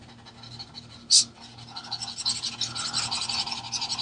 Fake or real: real